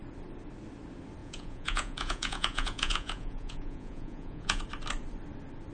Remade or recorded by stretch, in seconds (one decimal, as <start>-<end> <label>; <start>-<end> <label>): 0.0-1.2 recorded; 1.2-4.6 remade; 4.6-5.7 recorded